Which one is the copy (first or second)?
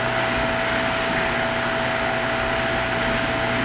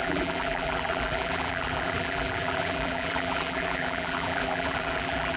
second